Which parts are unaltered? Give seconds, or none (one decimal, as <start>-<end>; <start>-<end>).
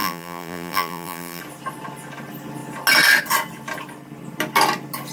1.4-5.1